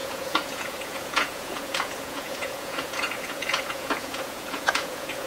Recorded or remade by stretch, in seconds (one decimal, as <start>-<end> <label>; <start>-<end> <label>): 0.0-5.3 remade